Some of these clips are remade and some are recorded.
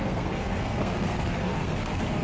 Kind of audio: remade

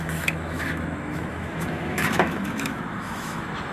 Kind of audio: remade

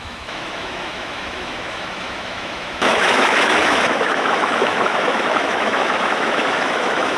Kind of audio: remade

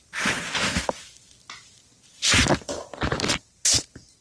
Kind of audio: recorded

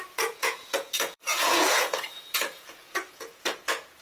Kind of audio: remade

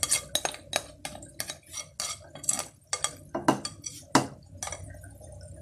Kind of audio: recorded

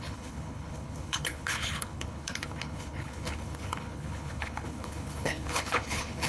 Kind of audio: remade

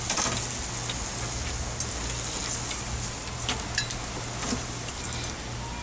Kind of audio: recorded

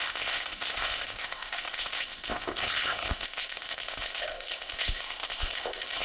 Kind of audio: remade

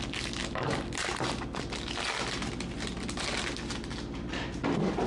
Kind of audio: recorded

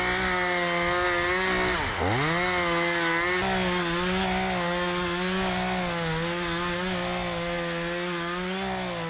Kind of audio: recorded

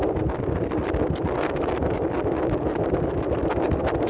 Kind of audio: recorded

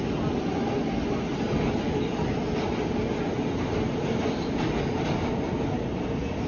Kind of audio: recorded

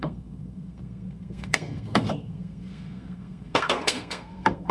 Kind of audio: remade